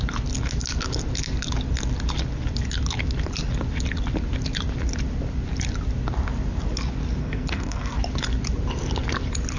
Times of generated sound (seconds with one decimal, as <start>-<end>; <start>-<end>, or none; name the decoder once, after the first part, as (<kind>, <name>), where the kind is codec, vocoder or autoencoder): 7.2-8.0 (codec, SNAC)